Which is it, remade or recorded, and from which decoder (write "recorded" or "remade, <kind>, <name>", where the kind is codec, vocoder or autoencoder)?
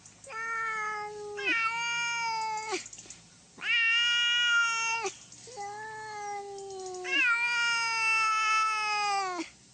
recorded